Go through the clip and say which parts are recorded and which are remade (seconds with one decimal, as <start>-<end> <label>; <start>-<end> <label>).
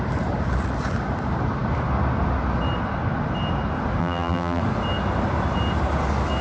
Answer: 0.0-4.0 recorded; 4.0-4.6 remade; 4.6-6.4 recorded